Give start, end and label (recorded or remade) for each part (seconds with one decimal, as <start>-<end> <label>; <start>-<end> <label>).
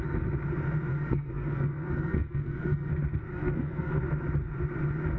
0.0-0.9 recorded; 0.9-2.9 remade; 2.9-3.3 recorded; 3.3-4.0 remade; 4.0-5.2 recorded